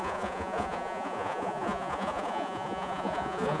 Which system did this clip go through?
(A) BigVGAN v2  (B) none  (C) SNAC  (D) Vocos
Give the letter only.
D